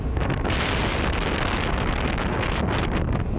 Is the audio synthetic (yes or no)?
no